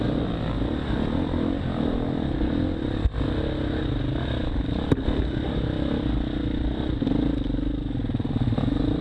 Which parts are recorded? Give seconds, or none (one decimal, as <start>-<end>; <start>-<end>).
0.0-9.0